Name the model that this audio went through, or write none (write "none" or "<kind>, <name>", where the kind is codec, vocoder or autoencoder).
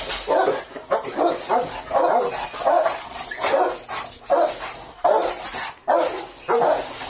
none